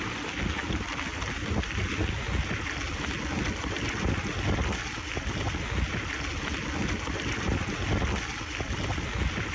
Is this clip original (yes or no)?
yes